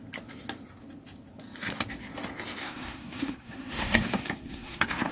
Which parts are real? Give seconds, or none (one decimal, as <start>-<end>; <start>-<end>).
0.0-2.6